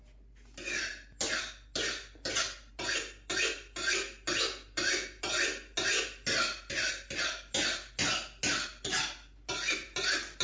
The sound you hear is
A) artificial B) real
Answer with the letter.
B